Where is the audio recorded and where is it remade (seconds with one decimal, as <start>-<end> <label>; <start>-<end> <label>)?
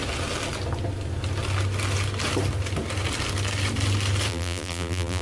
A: 0.0-4.3 recorded; 4.3-5.2 remade